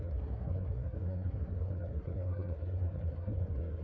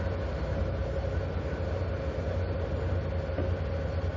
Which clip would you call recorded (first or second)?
second